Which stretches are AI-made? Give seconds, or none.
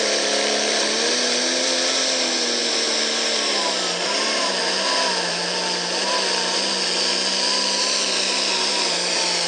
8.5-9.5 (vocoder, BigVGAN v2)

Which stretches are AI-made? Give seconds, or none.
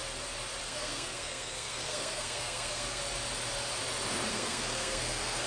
0.6-3.0 (codec, SNAC); 4.3-5.5